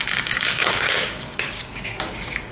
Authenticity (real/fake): fake